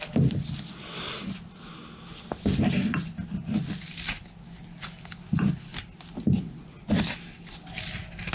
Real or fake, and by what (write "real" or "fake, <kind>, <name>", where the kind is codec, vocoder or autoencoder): real